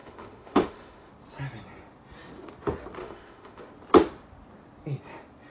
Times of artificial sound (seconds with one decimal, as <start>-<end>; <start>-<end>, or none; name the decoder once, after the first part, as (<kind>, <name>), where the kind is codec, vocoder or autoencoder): 0.0-1.1 (autoencoder, DAC-VAE); 3.0-3.6